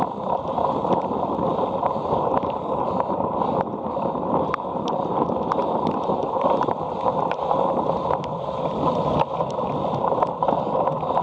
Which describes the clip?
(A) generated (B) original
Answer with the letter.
B